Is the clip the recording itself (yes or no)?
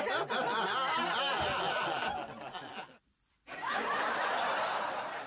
yes